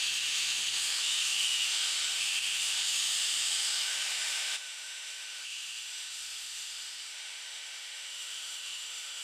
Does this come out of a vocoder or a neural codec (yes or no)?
yes